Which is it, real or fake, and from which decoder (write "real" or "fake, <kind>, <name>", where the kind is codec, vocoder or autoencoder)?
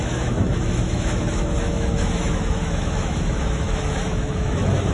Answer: fake, autoencoder, DAC-VAE